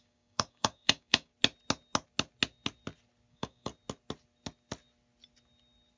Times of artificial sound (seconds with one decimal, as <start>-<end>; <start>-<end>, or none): 0.0-1.3; 3.3-3.7